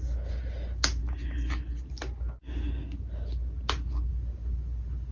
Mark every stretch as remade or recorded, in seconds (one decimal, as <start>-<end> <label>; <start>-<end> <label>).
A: 0.0-5.1 recorded